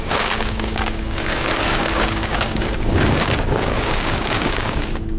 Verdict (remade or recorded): remade